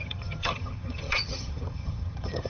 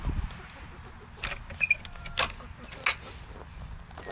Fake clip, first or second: first